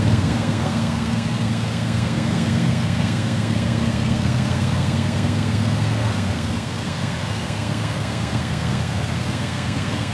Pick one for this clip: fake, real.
fake